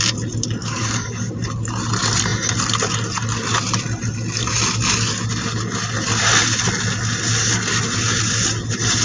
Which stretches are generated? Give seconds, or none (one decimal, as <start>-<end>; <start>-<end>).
0.6-1.3